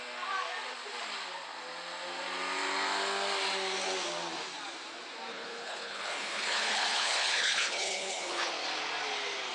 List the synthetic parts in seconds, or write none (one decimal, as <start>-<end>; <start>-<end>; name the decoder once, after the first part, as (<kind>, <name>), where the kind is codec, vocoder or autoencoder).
5.3-8.5 (codec, HILCodec)